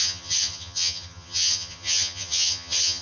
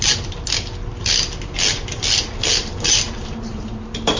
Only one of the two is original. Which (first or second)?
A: second